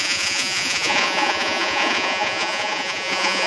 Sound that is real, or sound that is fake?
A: fake